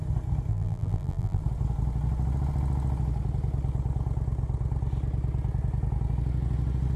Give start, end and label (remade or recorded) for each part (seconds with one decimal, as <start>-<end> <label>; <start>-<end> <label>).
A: 0.0-0.5 recorded; 0.5-1.4 remade; 1.4-7.0 recorded

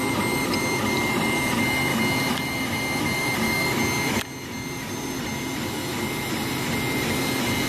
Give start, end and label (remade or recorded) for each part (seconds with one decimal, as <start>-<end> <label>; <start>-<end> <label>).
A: 0.0-7.7 recorded

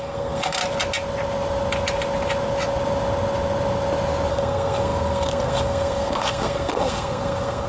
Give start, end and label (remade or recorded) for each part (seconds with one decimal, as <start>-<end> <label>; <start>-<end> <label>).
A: 0.0-0.6 remade; 0.6-4.3 recorded; 4.3-7.7 remade

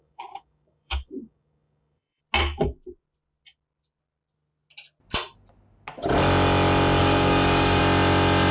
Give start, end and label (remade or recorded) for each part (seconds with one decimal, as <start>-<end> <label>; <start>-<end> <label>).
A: 0.0-2.2 remade; 2.2-7.0 recorded; 7.0-7.8 remade; 7.8-8.5 recorded

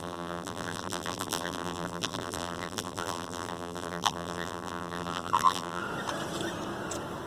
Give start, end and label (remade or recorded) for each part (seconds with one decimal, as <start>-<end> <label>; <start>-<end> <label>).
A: 0.0-5.8 remade; 5.8-7.3 recorded